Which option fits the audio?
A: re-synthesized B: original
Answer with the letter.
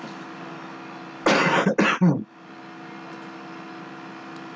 B